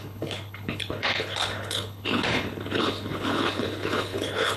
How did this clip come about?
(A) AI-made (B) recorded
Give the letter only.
A